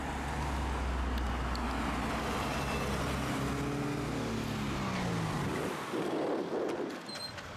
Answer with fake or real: real